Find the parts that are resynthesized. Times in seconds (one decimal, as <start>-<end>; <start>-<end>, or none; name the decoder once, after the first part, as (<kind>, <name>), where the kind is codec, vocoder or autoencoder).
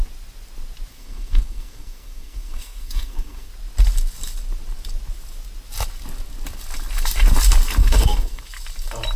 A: 0.9-3.5 (codec, SNAC); 7.8-8.4